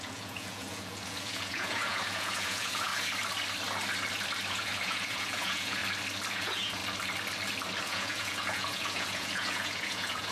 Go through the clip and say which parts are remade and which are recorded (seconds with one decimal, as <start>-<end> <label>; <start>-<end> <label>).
0.0-2.9 remade; 2.9-4.5 recorded; 4.5-5.8 remade; 5.8-6.3 recorded; 6.3-6.8 remade; 6.8-7.8 recorded; 7.8-10.3 remade